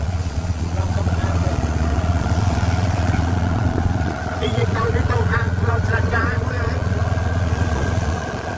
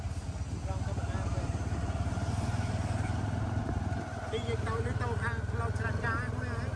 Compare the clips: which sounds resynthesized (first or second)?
first